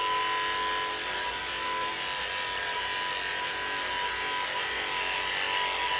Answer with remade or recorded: recorded